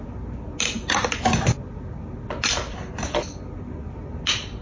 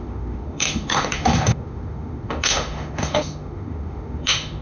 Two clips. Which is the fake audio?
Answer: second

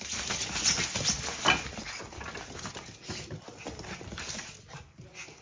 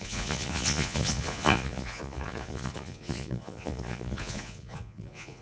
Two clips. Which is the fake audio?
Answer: second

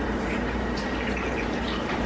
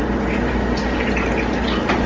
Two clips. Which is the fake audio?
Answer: first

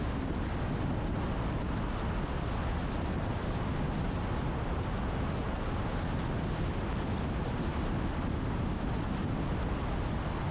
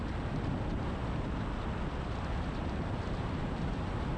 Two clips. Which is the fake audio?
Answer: second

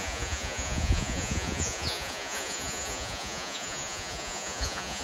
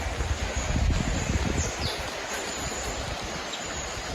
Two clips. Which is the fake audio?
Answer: first